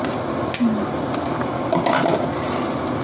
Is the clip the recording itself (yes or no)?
yes